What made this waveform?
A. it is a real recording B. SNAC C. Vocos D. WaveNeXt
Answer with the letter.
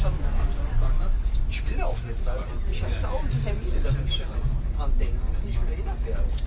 A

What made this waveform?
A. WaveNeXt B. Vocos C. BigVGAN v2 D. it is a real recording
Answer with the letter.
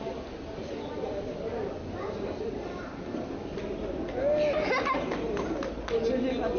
D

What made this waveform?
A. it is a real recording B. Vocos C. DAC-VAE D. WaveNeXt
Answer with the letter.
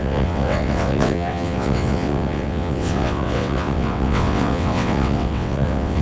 D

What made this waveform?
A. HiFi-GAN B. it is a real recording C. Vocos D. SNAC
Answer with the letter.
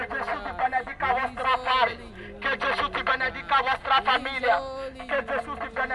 B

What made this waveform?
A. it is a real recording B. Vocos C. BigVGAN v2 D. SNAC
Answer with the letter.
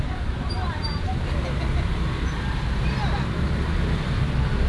C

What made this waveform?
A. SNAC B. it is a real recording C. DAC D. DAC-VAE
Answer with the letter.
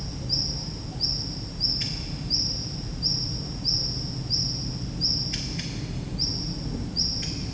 B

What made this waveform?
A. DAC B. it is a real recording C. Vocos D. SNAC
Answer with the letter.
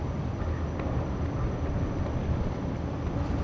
B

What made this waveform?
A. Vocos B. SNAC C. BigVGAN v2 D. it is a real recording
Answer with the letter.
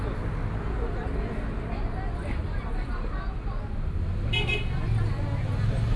D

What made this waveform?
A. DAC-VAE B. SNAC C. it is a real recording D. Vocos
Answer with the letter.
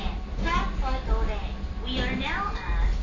C